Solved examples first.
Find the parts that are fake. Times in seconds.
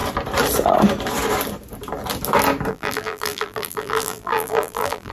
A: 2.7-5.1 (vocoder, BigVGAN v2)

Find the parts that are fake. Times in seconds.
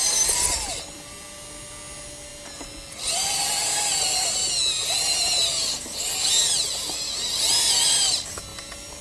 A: none